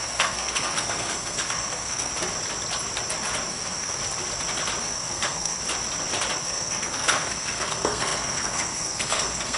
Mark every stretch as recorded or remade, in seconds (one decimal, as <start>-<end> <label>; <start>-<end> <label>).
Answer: 0.0-2.1 remade; 2.1-3.5 recorded; 3.5-4.0 remade; 4.0-4.8 recorded; 4.8-5.6 remade; 5.6-6.4 recorded; 6.4-9.6 remade